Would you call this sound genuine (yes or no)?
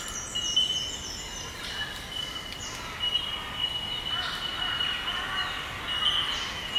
yes